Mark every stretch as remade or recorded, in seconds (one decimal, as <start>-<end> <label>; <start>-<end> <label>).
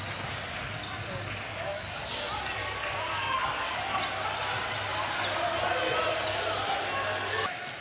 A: 0.0-1.7 recorded; 1.7-2.2 remade; 2.2-2.6 recorded; 2.6-4.0 remade; 4.0-7.8 recorded